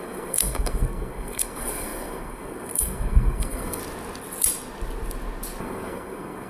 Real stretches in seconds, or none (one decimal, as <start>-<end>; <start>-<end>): 3.8-5.6